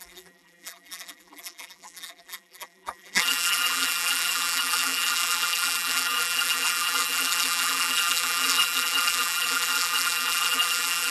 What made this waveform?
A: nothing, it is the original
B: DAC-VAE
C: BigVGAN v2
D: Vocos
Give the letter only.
C